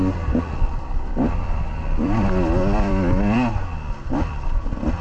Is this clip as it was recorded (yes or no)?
no